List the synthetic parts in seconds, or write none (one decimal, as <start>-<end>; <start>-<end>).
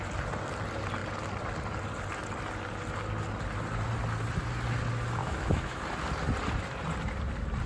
5.2-5.8